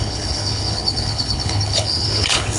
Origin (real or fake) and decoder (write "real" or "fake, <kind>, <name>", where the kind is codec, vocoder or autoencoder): fake, codec, HILCodec